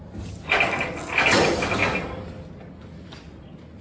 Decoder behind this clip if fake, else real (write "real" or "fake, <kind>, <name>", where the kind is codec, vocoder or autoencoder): real